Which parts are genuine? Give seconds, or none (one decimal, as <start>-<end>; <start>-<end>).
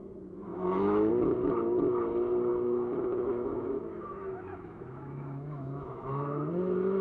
0.0-0.5; 1.1-2.5; 6.5-7.0